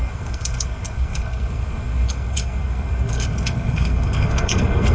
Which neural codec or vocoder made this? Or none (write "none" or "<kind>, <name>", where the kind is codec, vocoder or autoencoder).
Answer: codec, SNAC